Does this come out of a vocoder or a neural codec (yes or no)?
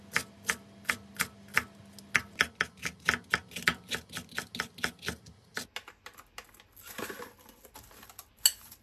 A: no